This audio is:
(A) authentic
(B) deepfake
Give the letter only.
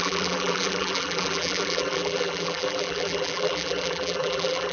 B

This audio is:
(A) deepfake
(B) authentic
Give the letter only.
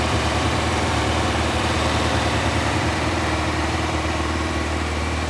A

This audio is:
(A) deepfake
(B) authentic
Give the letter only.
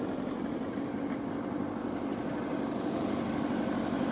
B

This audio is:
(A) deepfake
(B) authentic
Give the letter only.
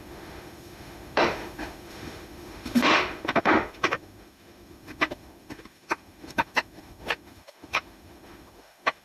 A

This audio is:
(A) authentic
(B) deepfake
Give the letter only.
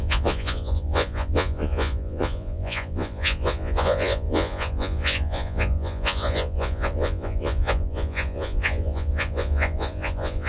B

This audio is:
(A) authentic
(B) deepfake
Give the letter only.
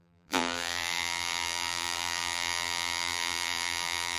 B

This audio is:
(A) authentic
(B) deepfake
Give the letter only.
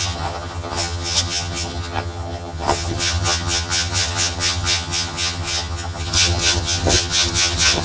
B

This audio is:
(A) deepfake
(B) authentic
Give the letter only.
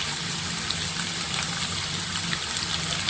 B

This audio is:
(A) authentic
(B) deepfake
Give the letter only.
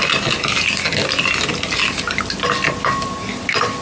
A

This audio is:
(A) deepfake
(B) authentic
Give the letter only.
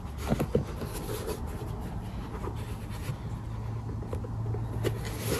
B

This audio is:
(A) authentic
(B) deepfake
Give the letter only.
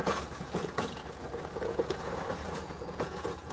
B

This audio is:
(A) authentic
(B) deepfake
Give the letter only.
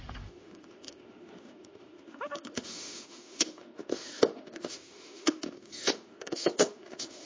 B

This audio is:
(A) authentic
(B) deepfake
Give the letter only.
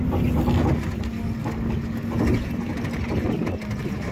A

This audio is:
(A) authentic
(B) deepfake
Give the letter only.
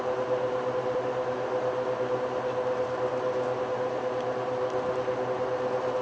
A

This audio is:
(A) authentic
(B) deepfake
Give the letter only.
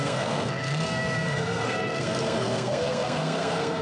B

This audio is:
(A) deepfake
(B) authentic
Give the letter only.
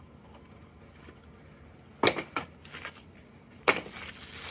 B